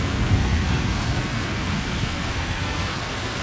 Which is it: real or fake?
fake